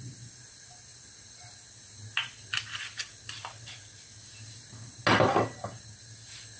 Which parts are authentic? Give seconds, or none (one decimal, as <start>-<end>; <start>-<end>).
0.0-6.6